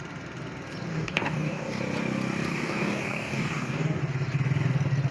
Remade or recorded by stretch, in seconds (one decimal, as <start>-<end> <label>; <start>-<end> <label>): 0.0-0.9 recorded; 0.9-1.8 remade; 1.8-2.5 recorded; 2.5-4.0 remade; 4.0-5.1 recorded